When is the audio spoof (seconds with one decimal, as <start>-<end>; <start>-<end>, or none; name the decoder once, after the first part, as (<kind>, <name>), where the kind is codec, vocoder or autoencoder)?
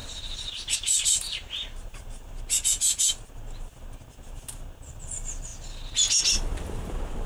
0.0-2.3 (vocoder, BigVGAN v2)